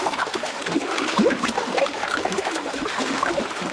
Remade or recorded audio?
remade